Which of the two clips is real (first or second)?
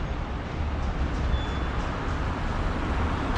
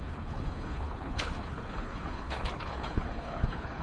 first